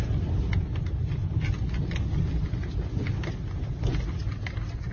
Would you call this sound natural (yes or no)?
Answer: yes